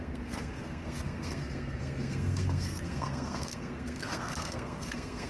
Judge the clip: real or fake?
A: fake